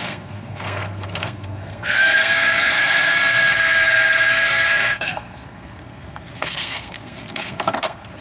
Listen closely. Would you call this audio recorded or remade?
remade